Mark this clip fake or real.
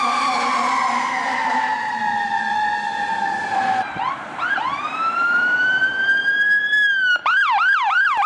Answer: fake